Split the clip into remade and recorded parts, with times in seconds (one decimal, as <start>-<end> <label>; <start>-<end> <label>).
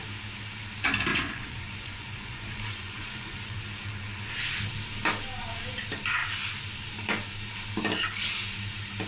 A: 0.0-1.1 recorded; 1.1-3.6 remade; 3.6-9.1 recorded